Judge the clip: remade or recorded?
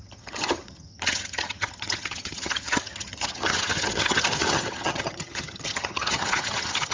remade